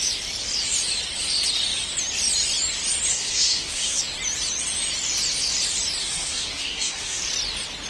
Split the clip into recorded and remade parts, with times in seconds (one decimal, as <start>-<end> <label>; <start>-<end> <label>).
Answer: 0.0-3.1 recorded; 3.1-4.0 remade; 4.0-6.0 recorded; 6.0-7.2 remade; 7.2-7.9 recorded